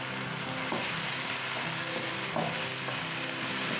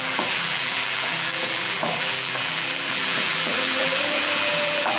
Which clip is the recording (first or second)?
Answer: first